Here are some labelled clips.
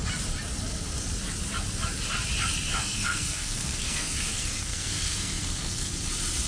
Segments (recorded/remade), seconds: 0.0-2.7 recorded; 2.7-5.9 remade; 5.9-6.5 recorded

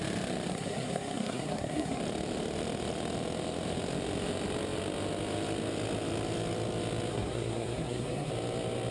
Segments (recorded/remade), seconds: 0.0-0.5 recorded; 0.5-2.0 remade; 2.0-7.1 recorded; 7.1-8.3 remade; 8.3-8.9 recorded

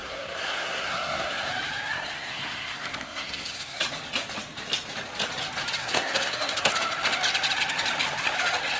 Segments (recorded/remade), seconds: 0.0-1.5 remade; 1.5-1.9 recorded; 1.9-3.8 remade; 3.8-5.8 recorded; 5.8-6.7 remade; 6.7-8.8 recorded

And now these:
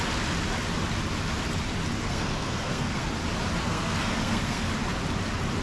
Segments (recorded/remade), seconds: 0.0-2.0 recorded; 2.0-3.1 remade; 3.1-3.6 recorded; 3.6-4.7 remade; 4.7-5.6 recorded

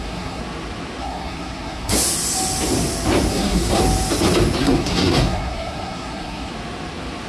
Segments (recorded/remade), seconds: 0.0-0.4 remade; 0.4-1.0 recorded; 1.0-1.9 remade; 1.9-3.3 recorded; 3.3-3.8 remade; 3.8-4.6 recorded; 4.6-6.5 remade; 6.5-7.3 recorded

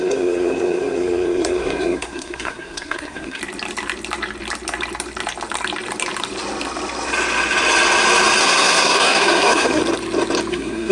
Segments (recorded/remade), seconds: 0.0-3.4 remade; 3.4-8.4 recorded; 8.4-9.8 remade; 9.8-10.5 recorded; 10.5-10.9 remade

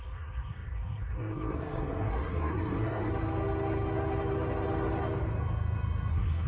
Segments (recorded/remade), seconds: 0.0-3.1 remade; 3.1-6.1 recorded; 6.1-6.5 remade